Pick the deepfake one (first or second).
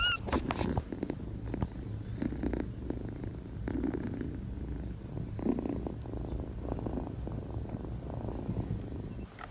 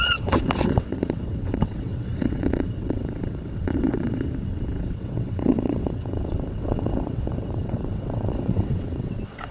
second